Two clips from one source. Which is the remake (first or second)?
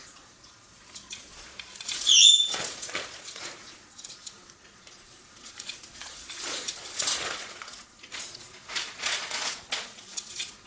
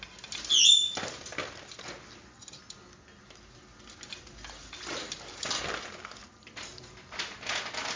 first